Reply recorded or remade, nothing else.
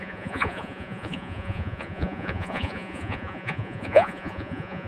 remade